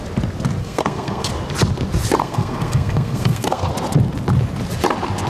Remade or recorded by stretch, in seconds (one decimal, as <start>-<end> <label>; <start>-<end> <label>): 0.0-0.6 recorded; 0.6-1.3 remade; 1.3-2.2 recorded; 2.2-3.7 remade; 3.7-5.3 recorded